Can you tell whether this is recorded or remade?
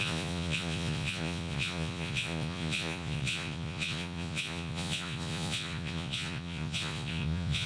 remade